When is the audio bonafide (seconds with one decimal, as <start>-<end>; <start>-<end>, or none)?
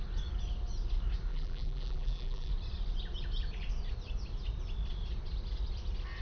0.0-1.3; 2.5-6.2